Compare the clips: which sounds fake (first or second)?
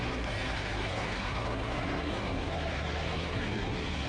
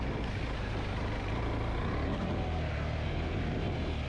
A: first